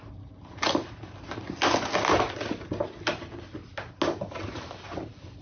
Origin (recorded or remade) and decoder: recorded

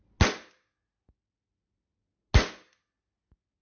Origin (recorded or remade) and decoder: recorded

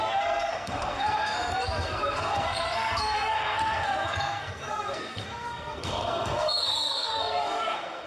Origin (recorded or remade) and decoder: remade, codec, SNAC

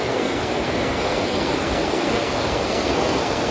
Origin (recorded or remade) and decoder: remade, codec, SNAC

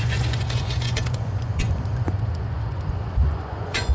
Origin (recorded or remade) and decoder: remade, vocoder, Vocos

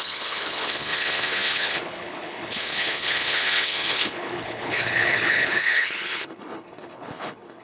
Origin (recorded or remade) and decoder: remade, codec, HILCodec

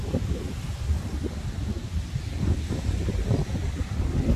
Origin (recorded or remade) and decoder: recorded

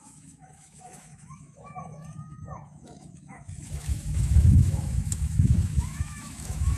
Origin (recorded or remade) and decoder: remade, autoencoder, DAC-VAE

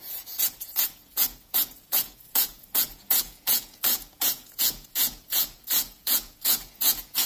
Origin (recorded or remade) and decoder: remade, vocoder, Vocos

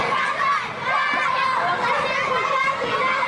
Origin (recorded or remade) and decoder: recorded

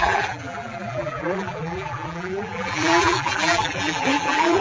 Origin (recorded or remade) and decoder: remade, vocoder, BigVGAN v2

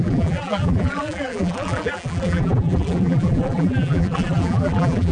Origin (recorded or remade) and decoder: remade, vocoder, BigVGAN v2